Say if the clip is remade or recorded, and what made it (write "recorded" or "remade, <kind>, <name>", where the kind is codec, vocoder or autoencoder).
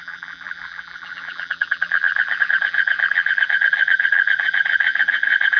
remade, vocoder, BigVGAN v2